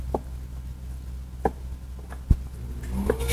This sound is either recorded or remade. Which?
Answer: recorded